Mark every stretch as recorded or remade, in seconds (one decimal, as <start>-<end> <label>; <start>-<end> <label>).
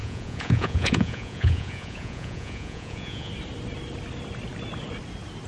0.0-3.3 remade; 3.3-5.5 recorded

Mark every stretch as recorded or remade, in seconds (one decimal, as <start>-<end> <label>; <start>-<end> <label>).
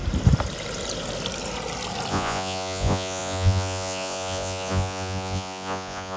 0.0-2.1 recorded; 2.1-6.2 remade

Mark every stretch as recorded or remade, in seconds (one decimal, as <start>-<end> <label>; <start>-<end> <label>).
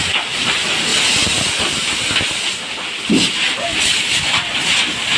0.0-5.2 recorded